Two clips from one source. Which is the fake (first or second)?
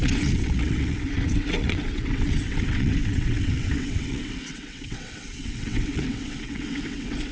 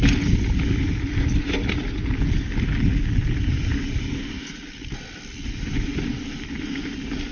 first